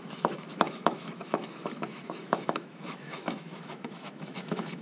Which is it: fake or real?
fake